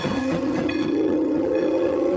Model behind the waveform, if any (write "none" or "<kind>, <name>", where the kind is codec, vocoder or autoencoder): vocoder, HiFi-GAN